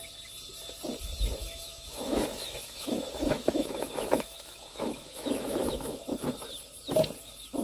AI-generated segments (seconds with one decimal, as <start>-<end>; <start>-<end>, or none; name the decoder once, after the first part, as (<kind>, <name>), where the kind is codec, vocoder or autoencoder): 1.4-6.0 (autoencoder, DAC-VAE)